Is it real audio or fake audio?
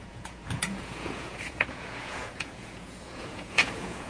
fake